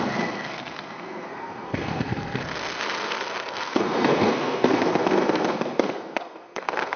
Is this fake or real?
fake